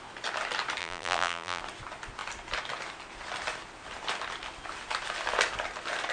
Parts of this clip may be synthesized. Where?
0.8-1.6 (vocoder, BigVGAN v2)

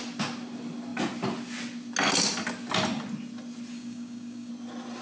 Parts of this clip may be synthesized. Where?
3.7-4.5 (codec, DAC)

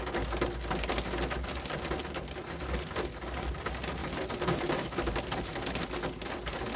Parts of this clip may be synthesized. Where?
4.0-5.5 (vocoder, BigVGAN v2)

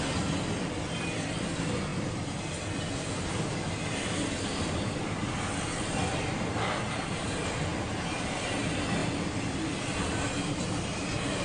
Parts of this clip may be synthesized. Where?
none

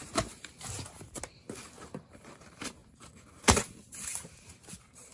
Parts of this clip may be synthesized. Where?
0.0-0.5 (vocoder, BigVGAN v2); 1.8-5.1

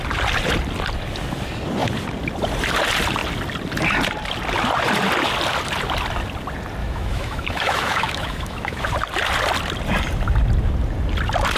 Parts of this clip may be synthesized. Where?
6.8-8.8 (autoencoder, DAC-VAE)